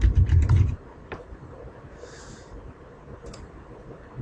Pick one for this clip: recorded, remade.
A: remade